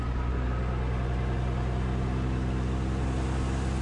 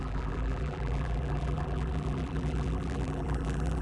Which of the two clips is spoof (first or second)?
second